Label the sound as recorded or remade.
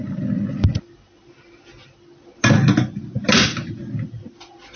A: recorded